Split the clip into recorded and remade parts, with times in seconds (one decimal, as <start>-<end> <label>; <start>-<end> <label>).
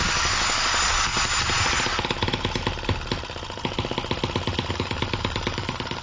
0.0-1.1 remade; 1.1-4.7 recorded; 4.7-6.0 remade